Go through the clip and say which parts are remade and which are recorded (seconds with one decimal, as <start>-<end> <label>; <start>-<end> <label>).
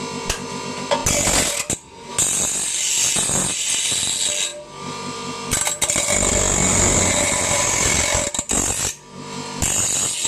0.0-10.3 recorded